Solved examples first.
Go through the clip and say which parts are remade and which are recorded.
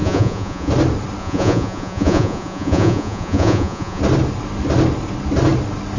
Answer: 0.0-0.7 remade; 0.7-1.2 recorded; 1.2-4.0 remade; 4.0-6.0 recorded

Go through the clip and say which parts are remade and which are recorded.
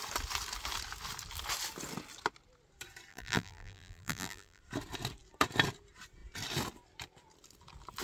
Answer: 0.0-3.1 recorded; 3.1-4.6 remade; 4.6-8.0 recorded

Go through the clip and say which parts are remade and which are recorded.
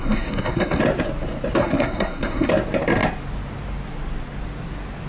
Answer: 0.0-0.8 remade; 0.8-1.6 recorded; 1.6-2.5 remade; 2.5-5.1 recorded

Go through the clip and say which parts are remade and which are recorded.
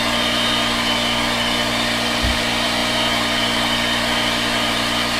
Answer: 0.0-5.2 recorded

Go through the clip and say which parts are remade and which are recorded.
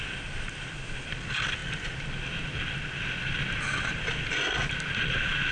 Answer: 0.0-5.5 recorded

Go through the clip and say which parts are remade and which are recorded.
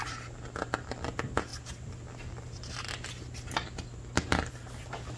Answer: 0.0-5.2 recorded